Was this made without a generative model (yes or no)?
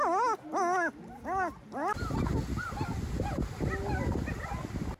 yes